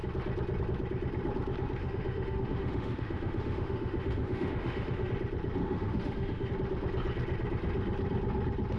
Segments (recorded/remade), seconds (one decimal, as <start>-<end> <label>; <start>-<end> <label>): 0.0-1.8 recorded; 1.8-5.1 remade; 5.1-5.6 recorded; 5.6-6.5 remade; 6.5-8.8 recorded